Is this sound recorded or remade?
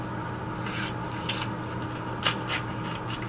recorded